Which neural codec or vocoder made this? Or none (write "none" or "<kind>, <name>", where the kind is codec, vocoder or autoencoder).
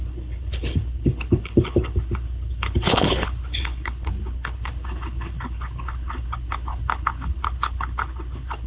codec, HILCodec